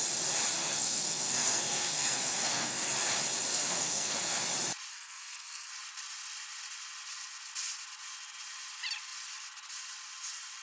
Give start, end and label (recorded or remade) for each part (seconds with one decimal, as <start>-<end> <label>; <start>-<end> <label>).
0.0-0.6 recorded; 0.6-2.9 remade; 2.9-3.5 recorded; 3.5-4.4 remade; 4.4-4.9 recorded; 4.9-5.7 remade; 5.7-10.6 recorded